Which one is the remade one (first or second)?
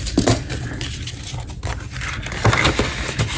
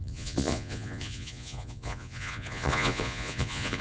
second